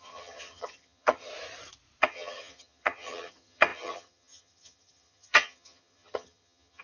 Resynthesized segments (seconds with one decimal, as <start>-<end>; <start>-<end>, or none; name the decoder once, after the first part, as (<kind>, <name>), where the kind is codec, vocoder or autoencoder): 0.0-1.3 (vocoder, HiFi-GAN); 2.0-6.8